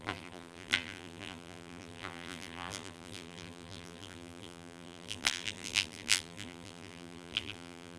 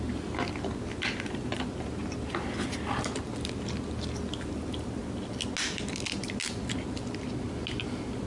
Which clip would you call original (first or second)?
second